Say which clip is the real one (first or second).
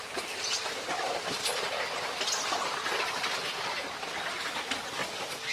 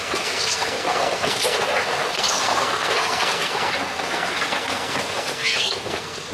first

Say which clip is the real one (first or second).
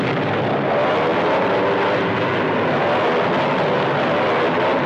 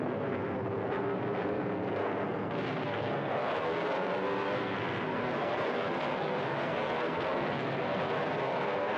first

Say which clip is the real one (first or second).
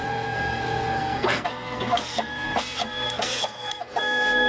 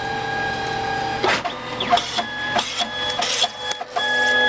second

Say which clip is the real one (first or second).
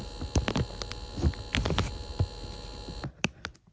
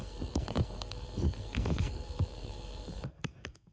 first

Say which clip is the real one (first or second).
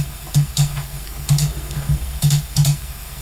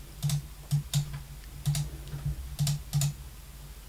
second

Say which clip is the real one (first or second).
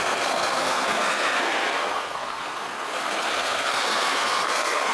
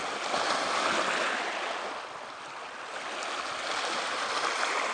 second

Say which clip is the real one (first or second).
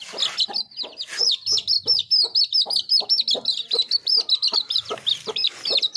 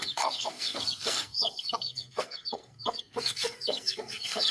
first